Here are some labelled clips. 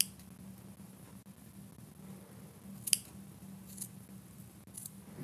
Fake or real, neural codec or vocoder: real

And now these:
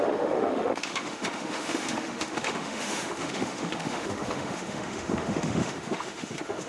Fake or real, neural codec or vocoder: fake, autoencoder, DAC-VAE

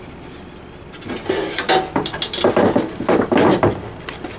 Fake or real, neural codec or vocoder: real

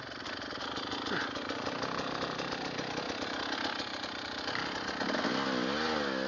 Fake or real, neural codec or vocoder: real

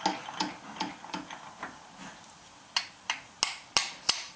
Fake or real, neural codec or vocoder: real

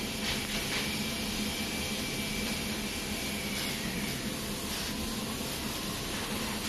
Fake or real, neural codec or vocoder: real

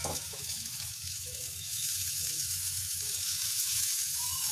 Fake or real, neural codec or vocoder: fake, autoencoder, DAC-VAE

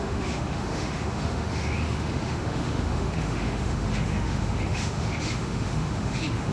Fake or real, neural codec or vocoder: fake, autoencoder, DAC-VAE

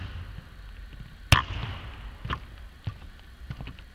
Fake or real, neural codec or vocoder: real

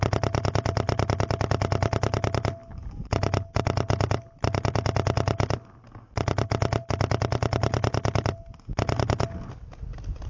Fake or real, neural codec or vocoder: real